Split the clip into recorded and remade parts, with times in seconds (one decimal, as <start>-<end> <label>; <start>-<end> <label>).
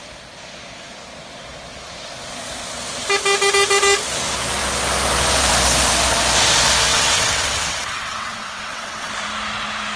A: 0.0-6.9 recorded; 6.9-9.1 remade; 9.1-10.0 recorded